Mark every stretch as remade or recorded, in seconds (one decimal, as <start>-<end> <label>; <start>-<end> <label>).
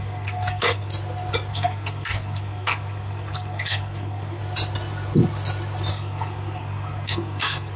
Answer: 0.0-0.9 remade; 0.9-1.5 recorded; 1.5-4.4 remade; 4.4-5.9 recorded; 5.9-7.8 remade